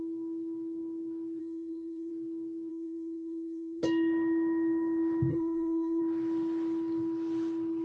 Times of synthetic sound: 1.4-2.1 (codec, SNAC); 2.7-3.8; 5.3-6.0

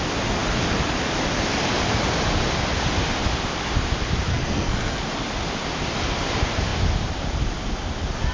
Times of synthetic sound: 4.3-5.0 (codec, SNAC)